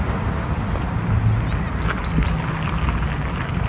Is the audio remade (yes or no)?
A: no